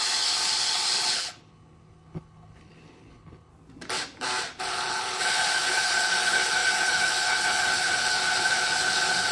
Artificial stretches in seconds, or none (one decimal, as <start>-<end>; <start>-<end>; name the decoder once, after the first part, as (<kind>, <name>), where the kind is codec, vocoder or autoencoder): 0.0-3.5 (codec, HILCodec); 4.6-9.3